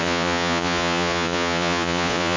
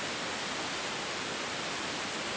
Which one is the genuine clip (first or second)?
second